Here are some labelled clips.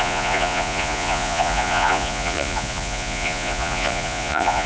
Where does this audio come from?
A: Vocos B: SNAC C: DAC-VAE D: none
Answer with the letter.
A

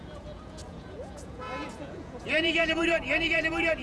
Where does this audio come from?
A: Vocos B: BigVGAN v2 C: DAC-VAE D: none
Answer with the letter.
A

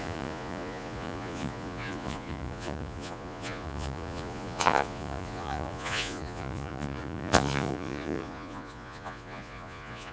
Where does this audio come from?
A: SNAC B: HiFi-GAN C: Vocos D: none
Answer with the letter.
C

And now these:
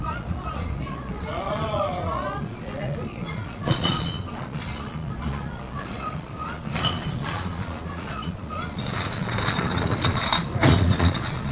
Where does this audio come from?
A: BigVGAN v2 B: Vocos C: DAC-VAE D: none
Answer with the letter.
B